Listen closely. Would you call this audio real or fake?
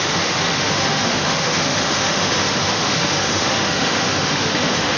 fake